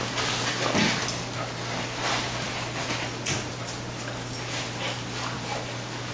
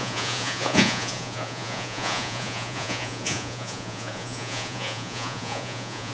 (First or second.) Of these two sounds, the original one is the first